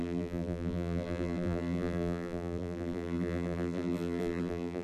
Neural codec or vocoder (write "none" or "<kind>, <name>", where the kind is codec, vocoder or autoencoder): vocoder, BigVGAN v2